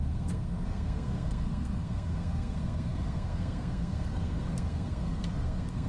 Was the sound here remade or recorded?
remade